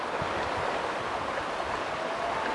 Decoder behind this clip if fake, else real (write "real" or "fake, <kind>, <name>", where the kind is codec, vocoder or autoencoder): real